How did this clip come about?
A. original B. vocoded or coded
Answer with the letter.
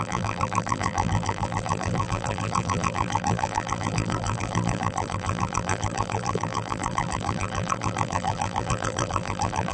B